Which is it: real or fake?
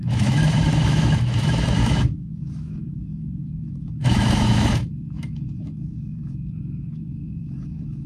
fake